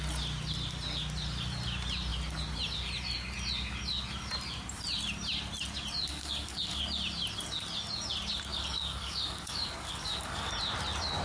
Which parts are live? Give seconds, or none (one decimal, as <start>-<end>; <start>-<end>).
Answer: 0.0-6.1; 6.8-8.5; 10.5-11.2

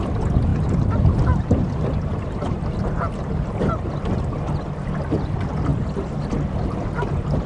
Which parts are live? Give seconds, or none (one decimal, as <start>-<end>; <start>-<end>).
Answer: 0.0-0.5; 3.9-7.5

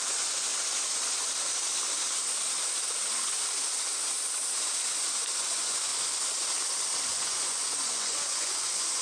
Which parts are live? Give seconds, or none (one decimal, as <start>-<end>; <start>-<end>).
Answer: 0.5-5.4; 5.9-7.1

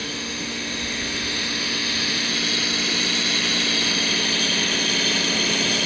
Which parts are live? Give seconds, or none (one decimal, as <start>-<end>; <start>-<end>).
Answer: 2.3-5.9

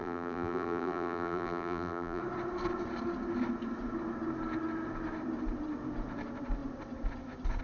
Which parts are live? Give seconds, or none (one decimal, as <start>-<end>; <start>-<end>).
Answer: 2.2-7.6

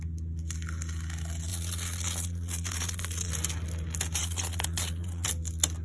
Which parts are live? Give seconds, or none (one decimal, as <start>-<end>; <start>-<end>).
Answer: 0.0-1.5; 3.3-4.2; 5.3-5.8